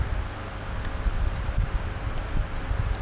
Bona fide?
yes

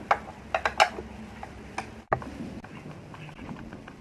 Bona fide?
yes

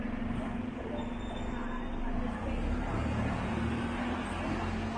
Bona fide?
yes